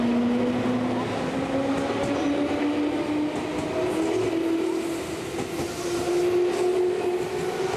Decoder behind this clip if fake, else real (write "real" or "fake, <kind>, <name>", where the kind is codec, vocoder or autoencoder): real